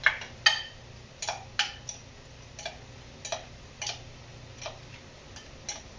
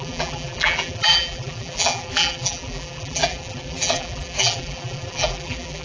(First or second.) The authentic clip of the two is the first